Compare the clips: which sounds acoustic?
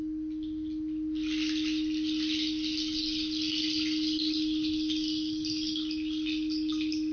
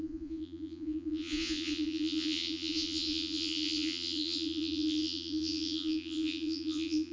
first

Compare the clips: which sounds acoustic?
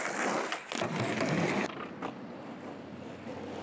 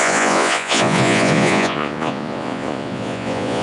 first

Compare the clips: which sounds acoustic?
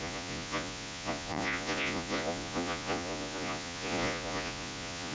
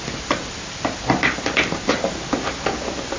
second